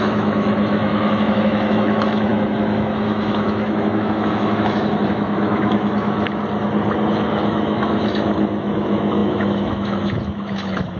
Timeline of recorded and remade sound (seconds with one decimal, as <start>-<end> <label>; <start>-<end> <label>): 0.0-6.4 remade; 6.4-7.1 recorded; 7.1-11.0 remade